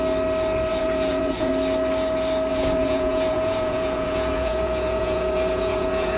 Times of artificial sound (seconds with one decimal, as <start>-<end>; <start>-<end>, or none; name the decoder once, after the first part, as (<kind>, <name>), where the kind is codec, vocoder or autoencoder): 0.7-1.5 (vocoder, Vocos); 2.5-6.2